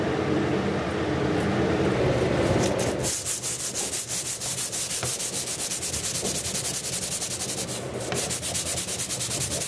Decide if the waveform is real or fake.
real